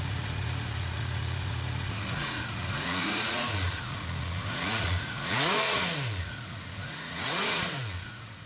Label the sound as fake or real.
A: fake